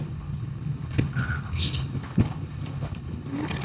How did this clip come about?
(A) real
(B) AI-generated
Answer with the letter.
B